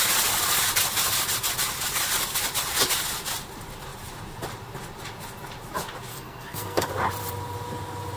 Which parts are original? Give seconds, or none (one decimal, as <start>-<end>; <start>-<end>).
0.0-6.1; 6.9-8.2